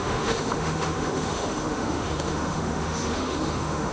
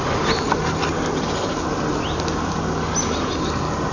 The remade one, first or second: first